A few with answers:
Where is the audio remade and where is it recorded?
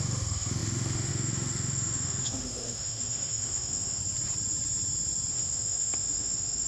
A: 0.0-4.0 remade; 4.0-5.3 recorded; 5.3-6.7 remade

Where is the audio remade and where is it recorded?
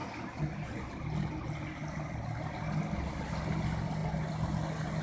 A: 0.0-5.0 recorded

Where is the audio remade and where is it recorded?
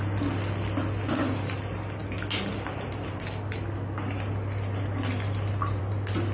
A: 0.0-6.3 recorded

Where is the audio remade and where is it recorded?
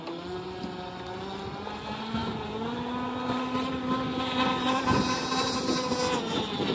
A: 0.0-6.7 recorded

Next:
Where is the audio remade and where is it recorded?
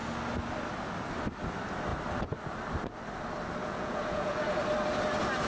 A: 0.0-3.6 recorded; 3.6-4.6 remade; 4.6-5.5 recorded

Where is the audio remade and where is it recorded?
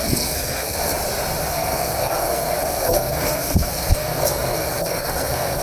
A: 0.0-0.9 remade; 0.9-1.5 recorded; 1.5-5.6 remade